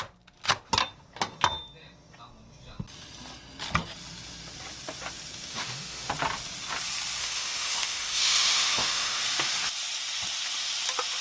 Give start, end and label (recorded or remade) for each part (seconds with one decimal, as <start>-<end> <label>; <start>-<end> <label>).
0.0-5.5 recorded; 5.5-6.1 remade; 6.1-7.2 recorded; 7.2-9.2 remade; 9.2-11.2 recorded